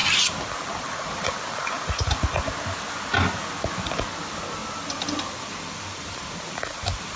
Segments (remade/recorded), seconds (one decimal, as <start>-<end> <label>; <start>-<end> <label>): 0.0-7.2 recorded